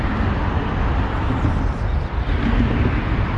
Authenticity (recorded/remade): recorded